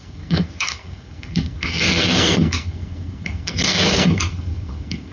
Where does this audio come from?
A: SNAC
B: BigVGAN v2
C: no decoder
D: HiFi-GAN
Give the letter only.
A